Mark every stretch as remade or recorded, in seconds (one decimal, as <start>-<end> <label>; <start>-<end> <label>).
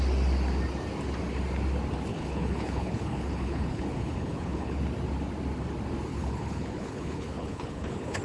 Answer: 0.0-2.1 recorded; 2.1-4.8 remade; 4.8-6.1 recorded; 6.1-8.2 remade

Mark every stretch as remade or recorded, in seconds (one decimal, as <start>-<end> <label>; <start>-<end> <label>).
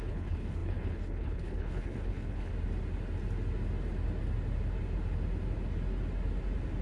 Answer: 0.0-2.5 remade; 2.5-6.8 recorded